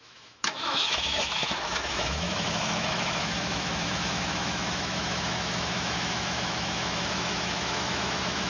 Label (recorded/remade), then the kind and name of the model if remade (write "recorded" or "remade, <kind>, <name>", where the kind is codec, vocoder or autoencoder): remade, autoencoder, DAC-VAE